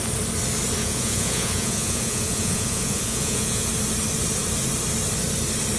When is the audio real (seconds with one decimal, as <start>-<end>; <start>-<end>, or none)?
0.0-0.8; 3.7-5.8